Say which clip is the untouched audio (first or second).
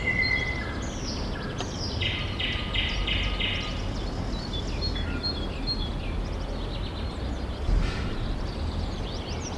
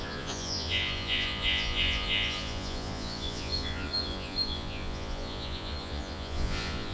first